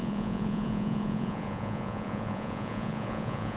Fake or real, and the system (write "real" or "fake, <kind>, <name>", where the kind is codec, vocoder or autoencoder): fake, vocoder, Vocos